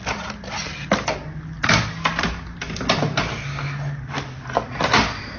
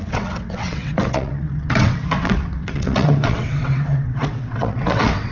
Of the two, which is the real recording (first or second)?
first